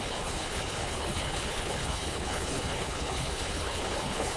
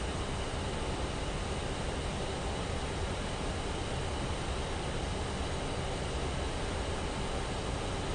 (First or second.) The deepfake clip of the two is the first